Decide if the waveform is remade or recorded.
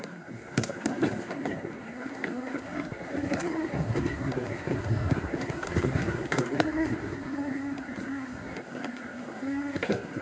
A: remade